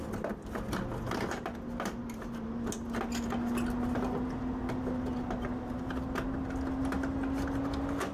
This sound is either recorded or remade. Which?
recorded